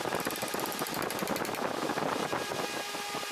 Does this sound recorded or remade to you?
recorded